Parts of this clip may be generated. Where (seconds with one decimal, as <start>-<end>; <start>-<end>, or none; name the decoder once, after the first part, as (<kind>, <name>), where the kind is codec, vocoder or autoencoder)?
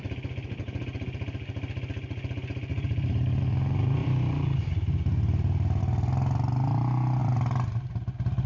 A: 2.7-3.4 (vocoder, BigVGAN v2); 4.0-5.8